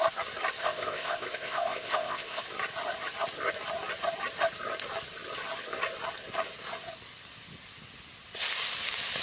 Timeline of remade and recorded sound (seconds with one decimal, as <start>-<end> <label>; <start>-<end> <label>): 0.0-0.6 recorded; 0.6-2.4 remade; 2.4-9.2 recorded